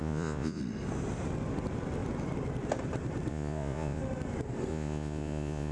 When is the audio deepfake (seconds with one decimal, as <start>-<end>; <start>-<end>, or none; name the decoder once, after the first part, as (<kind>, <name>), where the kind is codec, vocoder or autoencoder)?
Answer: 0.0-0.6 (vocoder, Vocos); 3.3-4.0; 4.7-5.7